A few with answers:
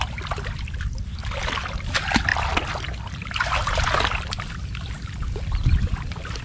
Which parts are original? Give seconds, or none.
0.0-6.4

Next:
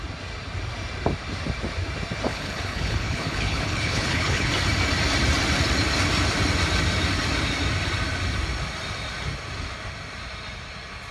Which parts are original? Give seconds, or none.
0.0-2.3; 4.5-11.1

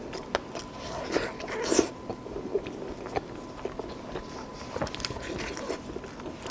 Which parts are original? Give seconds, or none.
0.0-6.5

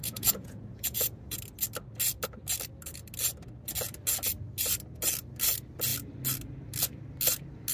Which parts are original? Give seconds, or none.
1.4-7.7

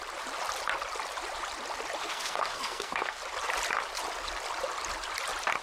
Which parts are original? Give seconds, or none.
0.0-2.0; 3.2-5.6

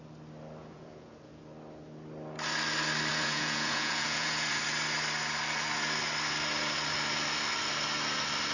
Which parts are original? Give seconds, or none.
0.0-0.6; 1.4-3.1; 4.6-8.5